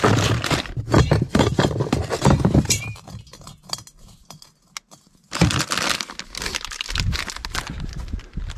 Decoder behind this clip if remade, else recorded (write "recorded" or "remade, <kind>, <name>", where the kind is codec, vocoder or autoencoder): recorded